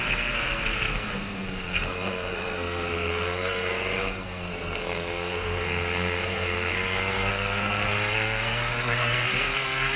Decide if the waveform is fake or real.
fake